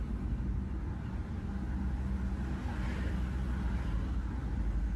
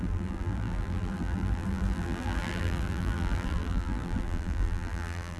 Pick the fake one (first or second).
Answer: second